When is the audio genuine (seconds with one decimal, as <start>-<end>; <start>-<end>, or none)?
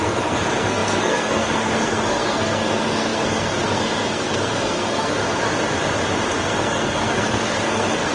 5.2-6.4